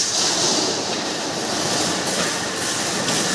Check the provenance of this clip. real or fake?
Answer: real